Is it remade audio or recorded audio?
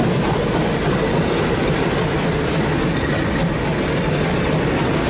recorded